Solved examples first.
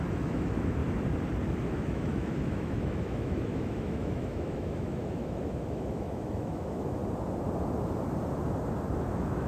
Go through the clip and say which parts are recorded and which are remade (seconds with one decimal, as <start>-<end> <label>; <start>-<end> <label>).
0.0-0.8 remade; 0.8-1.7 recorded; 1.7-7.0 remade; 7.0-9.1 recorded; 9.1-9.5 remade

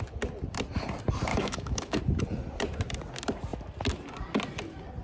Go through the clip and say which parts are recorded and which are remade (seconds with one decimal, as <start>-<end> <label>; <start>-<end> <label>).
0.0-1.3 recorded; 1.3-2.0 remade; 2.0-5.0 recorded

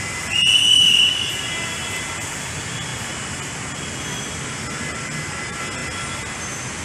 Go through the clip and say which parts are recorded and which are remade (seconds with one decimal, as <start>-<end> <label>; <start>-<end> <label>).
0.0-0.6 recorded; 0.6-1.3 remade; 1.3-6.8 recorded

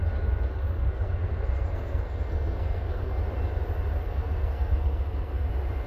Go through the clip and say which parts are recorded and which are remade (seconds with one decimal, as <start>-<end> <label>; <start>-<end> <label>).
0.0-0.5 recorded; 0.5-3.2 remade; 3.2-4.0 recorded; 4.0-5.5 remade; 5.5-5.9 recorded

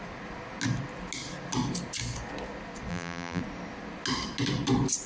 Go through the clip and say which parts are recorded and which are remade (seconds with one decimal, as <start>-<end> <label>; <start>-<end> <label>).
0.0-2.9 recorded; 2.9-3.4 remade; 3.4-5.1 recorded

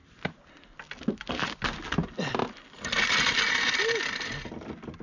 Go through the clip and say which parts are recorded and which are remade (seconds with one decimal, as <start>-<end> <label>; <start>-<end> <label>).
0.0-5.0 recorded

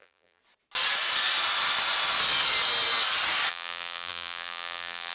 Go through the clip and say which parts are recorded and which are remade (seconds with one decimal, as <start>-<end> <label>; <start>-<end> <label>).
0.0-0.4 remade; 0.4-3.5 recorded; 3.5-5.1 remade